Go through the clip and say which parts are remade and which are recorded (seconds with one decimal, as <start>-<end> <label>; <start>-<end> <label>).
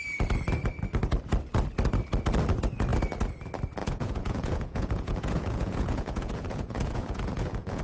0.0-3.8 recorded; 3.8-7.8 remade